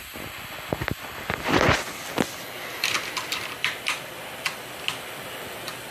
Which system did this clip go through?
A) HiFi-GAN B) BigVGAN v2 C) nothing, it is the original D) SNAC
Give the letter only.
C